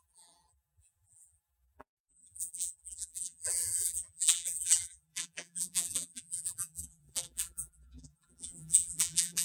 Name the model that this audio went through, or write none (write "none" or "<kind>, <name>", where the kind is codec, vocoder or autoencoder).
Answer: vocoder, BigVGAN v2